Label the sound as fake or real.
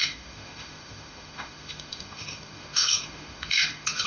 fake